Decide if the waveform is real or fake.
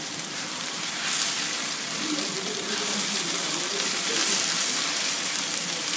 fake